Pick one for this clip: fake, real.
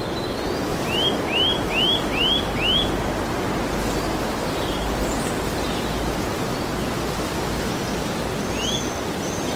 real